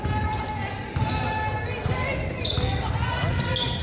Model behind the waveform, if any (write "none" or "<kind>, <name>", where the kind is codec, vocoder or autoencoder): none